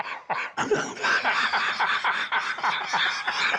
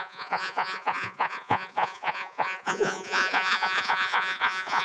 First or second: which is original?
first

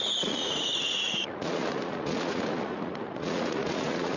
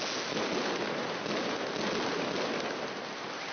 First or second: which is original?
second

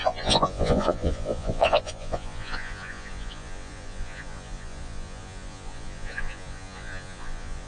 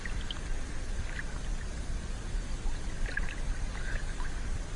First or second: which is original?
second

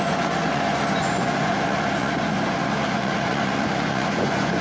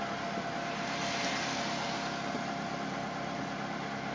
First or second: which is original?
second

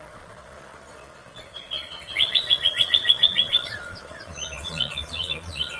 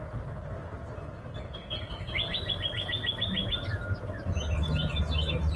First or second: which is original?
second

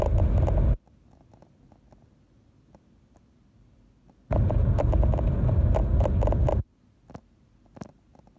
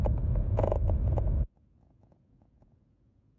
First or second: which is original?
first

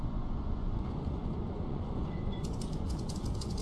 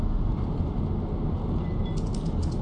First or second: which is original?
second